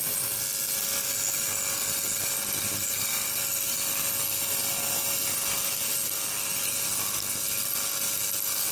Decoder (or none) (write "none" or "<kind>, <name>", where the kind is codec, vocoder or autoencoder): none